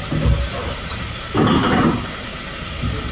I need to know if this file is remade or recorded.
recorded